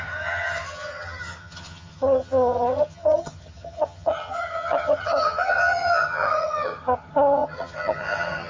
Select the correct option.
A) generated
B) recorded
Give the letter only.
A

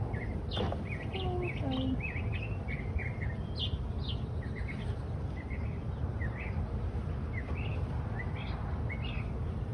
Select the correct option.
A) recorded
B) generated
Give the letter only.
A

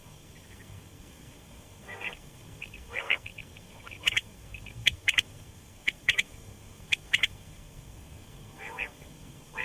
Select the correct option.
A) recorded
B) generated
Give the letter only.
B